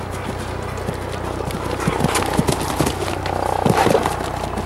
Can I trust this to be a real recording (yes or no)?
yes